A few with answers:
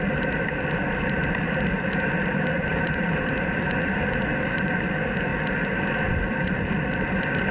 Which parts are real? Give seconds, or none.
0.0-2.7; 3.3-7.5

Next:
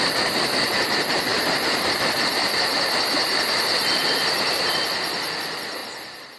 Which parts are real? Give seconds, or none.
0.0-1.3; 4.7-6.4

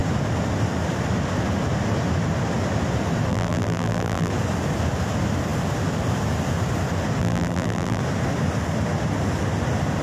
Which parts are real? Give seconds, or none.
0.0-3.3; 4.3-7.2; 8.0-10.0

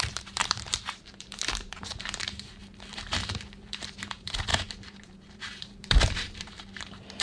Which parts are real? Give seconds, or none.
none

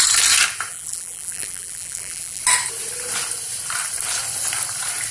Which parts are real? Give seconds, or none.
0.0-0.7; 2.4-5.1

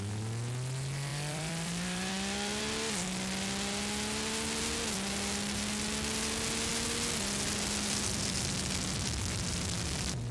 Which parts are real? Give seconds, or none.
0.0-1.1; 2.6-10.3